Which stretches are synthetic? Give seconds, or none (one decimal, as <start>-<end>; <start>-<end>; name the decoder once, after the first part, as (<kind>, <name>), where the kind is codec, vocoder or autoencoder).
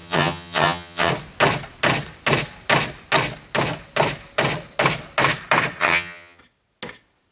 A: 0.0-1.1 (vocoder, HiFi-GAN); 5.8-6.4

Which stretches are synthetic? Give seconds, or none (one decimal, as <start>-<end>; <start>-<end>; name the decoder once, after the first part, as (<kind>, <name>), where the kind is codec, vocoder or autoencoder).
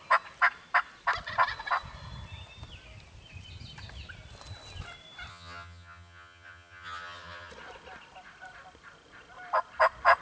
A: 5.3-7.5 (vocoder, HiFi-GAN)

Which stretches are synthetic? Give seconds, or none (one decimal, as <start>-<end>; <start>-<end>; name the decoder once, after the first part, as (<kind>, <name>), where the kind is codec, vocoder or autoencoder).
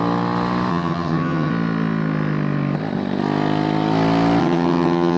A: 0.7-1.5 (vocoder, HiFi-GAN); 4.4-5.2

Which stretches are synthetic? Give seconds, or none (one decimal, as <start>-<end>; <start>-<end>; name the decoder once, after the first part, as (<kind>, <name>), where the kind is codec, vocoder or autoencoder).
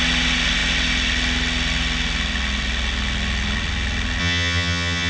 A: 4.2-5.1 (vocoder, HiFi-GAN)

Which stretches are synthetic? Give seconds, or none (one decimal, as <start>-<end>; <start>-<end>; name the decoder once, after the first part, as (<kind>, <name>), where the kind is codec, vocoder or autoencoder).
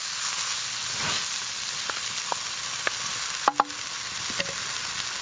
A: none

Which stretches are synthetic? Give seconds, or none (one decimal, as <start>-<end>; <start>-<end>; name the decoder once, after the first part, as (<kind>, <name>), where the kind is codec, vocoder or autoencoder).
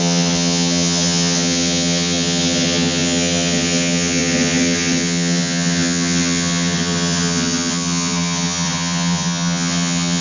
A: 0.0-10.2 (vocoder, HiFi-GAN)